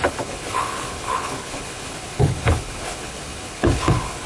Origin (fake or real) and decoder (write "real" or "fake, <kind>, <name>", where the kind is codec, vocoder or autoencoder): fake, codec, HILCodec